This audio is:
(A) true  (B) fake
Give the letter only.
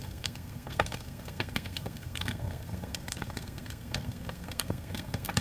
B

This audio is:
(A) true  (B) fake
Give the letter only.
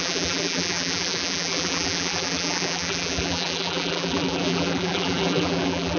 B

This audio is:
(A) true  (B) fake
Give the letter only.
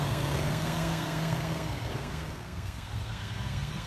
B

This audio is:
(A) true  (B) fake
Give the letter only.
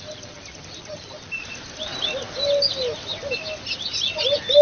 A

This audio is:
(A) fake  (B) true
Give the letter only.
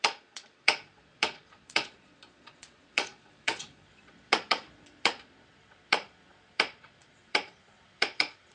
A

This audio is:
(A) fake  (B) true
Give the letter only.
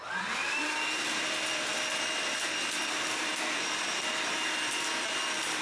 A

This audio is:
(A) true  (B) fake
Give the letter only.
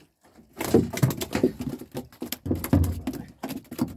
A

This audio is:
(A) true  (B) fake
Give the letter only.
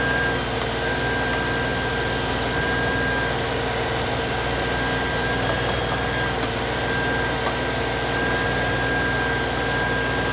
A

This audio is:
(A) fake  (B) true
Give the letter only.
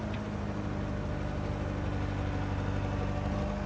B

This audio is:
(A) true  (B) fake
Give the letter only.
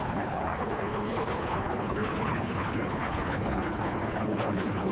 B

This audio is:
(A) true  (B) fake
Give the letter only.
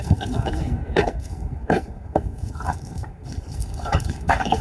B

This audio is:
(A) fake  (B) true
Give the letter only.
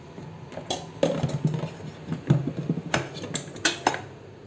B